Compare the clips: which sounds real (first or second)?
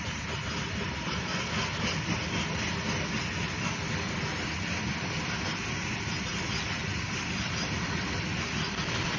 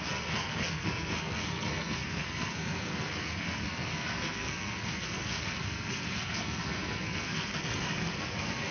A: first